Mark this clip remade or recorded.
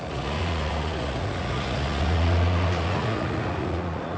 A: remade